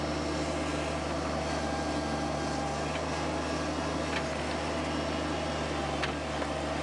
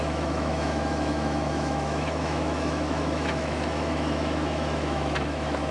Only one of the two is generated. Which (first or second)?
second